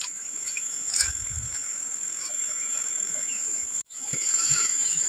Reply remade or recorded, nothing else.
remade